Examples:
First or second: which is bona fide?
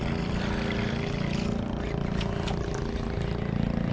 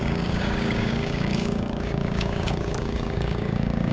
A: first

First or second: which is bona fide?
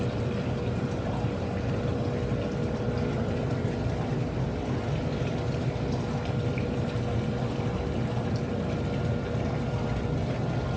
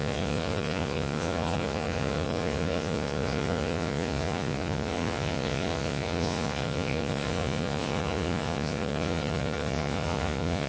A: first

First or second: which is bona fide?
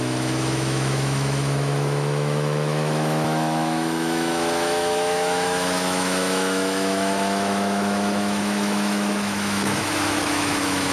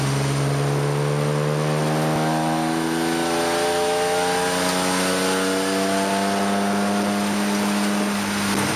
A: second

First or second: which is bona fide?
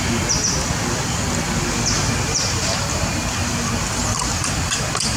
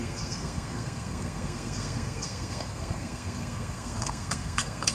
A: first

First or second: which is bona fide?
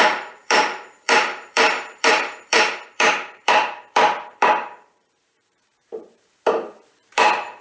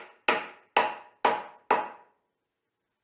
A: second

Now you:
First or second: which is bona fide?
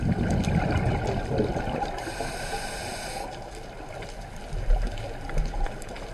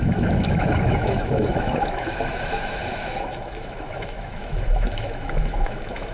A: first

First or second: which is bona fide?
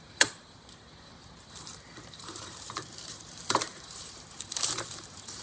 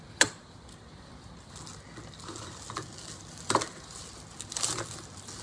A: second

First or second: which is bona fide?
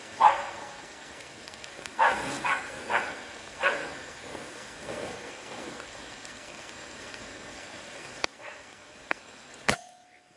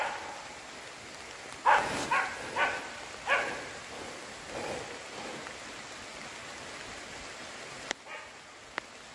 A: second